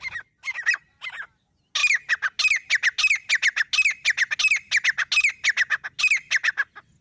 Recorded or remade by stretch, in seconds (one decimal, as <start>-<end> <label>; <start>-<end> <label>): 0.0-7.0 recorded

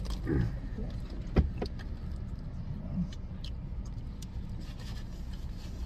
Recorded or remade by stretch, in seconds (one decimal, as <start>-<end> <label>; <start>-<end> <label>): 0.0-0.8 recorded; 0.8-1.3 remade; 1.3-3.7 recorded; 3.7-4.5 remade; 4.5-5.9 recorded

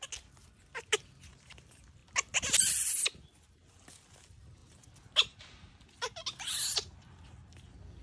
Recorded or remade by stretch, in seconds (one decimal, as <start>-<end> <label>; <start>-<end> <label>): 0.0-8.0 recorded

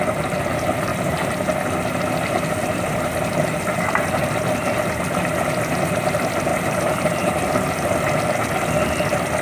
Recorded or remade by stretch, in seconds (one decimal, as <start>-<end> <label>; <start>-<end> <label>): 0.0-0.9 recorded; 0.9-1.4 remade; 1.4-6.5 recorded; 6.5-7.9 remade; 7.9-9.4 recorded

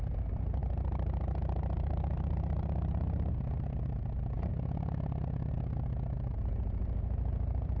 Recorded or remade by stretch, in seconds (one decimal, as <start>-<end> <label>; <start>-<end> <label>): 0.0-4.5 remade; 4.5-5.5 recorded; 5.5-7.8 remade

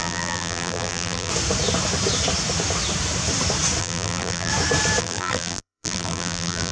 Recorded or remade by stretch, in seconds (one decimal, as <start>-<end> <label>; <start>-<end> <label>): 0.0-1.3 remade; 1.3-3.8 recorded; 3.8-4.5 remade; 4.5-5.0 recorded; 5.0-6.7 remade

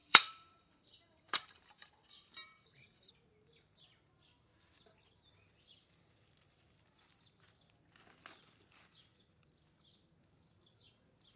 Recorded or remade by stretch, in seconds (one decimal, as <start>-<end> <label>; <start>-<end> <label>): 0.0-3.1 remade; 3.1-11.4 recorded

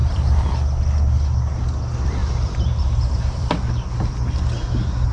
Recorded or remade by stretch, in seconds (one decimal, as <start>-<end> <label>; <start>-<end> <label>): 0.0-0.5 remade; 0.5-2.2 recorded; 2.2-3.4 remade; 3.4-5.1 recorded